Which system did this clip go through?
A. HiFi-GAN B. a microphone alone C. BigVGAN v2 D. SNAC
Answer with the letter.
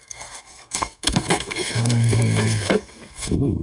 D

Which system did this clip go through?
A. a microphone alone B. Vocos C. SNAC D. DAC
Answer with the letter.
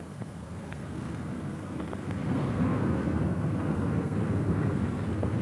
C